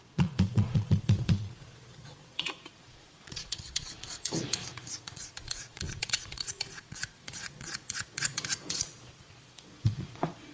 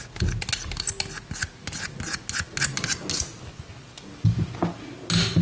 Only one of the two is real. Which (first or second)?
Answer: second